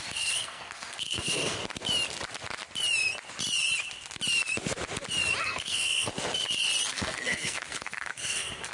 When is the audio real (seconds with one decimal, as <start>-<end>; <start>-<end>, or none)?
1.6-5.4; 6.1-6.9